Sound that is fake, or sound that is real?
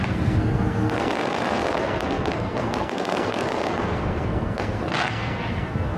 fake